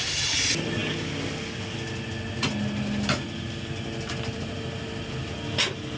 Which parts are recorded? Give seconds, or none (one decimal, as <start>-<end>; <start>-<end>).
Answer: 0.0-6.0